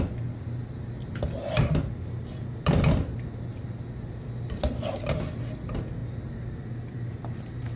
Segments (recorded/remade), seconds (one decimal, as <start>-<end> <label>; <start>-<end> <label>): 0.0-7.8 recorded